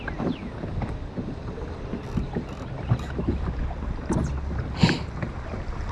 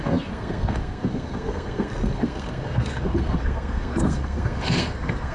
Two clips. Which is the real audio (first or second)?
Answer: first